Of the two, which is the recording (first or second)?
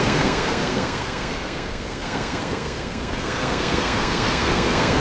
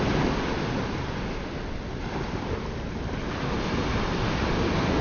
second